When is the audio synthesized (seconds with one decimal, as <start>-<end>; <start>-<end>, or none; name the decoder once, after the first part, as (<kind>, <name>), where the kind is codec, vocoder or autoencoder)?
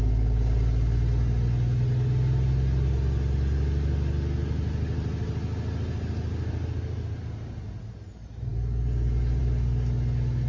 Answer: none